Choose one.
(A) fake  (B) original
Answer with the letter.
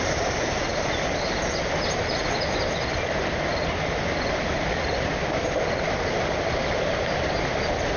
B